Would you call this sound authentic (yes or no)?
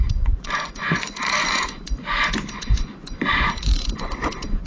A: no